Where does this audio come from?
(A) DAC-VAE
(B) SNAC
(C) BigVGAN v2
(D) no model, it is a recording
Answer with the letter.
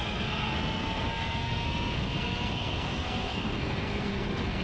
B